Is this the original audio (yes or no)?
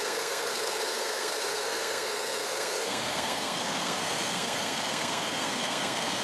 no